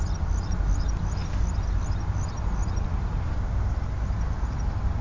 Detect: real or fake real